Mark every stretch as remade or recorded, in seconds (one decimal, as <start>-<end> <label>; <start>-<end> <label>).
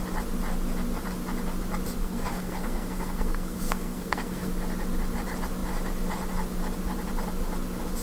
0.0-2.0 recorded; 2.0-4.5 remade; 4.5-8.0 recorded